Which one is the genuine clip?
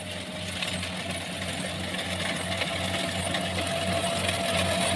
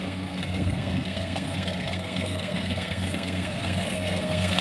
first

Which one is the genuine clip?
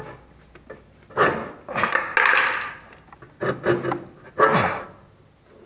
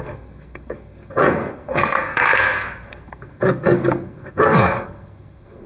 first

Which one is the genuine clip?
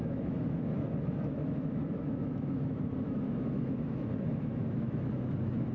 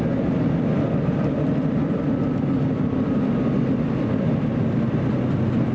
second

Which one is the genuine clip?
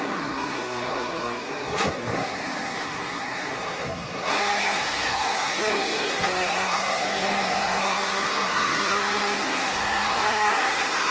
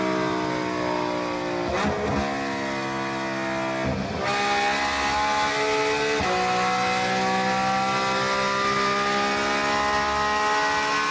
second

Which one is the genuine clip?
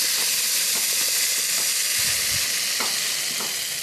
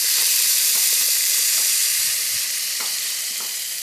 first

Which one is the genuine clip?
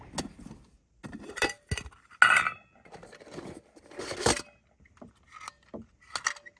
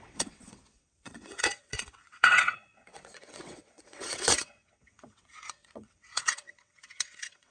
first